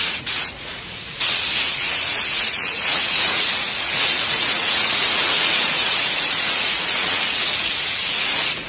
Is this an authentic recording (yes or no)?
no